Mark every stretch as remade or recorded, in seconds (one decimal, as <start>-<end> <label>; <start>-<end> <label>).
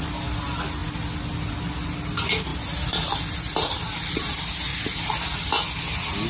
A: 0.0-6.3 recorded